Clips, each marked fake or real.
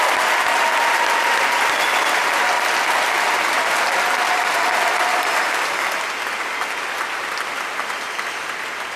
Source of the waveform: real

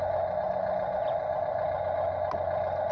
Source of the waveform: real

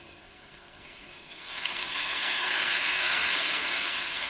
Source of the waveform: fake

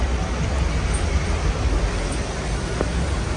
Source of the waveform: real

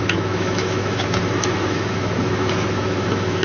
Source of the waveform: fake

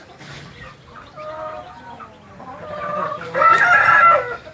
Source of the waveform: real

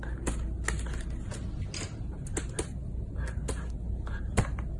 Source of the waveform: real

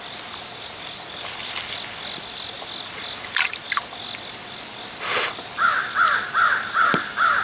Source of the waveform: real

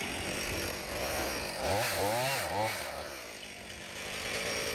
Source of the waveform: real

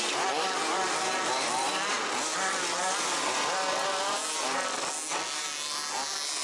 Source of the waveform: real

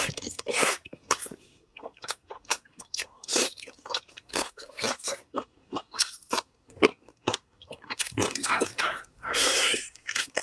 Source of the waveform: fake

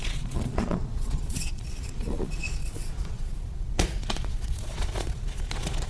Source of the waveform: fake